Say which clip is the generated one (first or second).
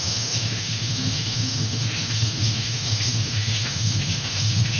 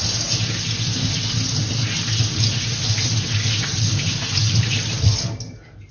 first